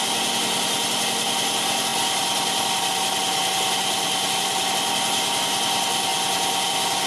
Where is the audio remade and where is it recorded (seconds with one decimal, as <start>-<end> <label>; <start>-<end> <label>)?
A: 0.0-7.1 recorded